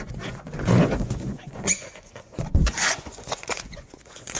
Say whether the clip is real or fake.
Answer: fake